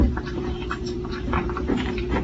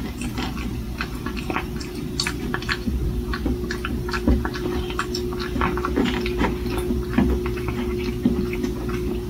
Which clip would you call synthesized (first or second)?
first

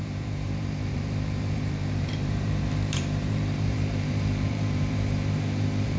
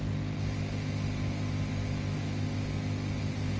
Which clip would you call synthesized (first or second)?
first